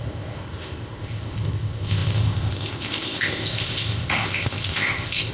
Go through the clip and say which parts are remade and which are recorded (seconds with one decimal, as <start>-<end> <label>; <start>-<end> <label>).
0.0-5.3 remade